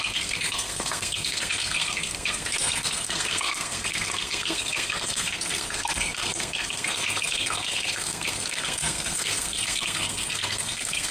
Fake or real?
fake